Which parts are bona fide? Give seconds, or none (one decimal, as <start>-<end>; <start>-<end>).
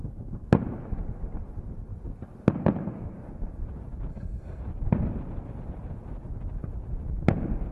0.0-4.1; 4.6-7.7